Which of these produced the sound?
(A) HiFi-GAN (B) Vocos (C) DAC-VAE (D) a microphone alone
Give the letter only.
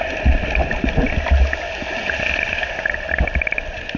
D